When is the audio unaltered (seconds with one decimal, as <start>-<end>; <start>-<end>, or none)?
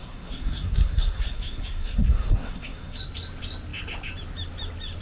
3.0-5.0